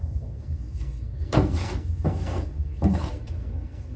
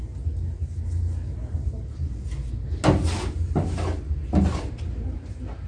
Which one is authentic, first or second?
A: second